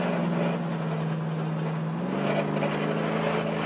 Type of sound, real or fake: real